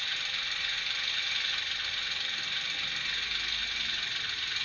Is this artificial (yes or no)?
no